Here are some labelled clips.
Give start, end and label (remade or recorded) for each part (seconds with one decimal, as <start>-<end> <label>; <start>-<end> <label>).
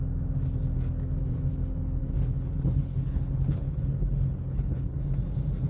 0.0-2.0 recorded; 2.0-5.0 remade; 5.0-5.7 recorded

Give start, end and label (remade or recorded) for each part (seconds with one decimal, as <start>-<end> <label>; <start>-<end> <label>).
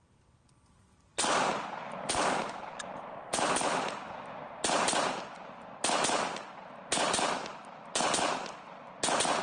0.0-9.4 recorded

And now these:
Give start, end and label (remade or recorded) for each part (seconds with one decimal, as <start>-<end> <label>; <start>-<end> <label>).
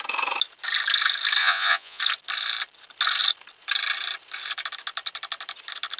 0.0-1.4 recorded; 1.4-2.0 remade; 2.0-6.0 recorded